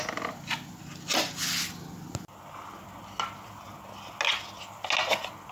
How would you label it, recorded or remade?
recorded